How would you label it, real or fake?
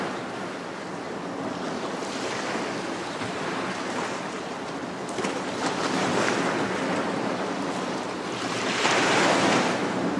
real